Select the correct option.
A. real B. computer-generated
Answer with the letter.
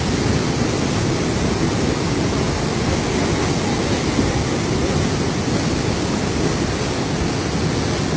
A